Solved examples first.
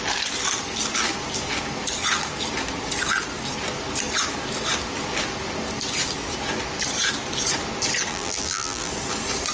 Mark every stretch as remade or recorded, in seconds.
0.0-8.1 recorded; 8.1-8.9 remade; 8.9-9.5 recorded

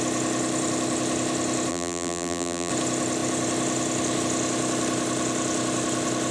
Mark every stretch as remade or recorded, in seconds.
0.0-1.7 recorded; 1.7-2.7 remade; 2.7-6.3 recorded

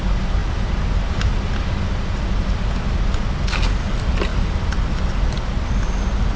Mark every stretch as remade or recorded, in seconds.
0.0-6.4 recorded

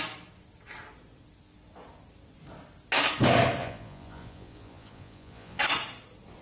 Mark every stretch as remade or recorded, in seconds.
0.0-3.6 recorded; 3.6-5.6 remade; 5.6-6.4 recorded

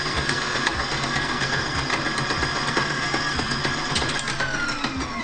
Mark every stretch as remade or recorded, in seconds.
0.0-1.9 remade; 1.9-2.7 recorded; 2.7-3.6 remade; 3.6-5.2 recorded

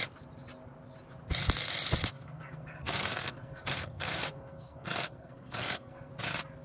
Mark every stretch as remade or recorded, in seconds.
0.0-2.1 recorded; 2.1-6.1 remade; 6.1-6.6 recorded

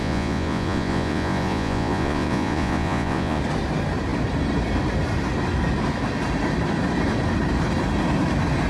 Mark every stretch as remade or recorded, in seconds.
0.0-3.4 remade; 3.4-8.7 recorded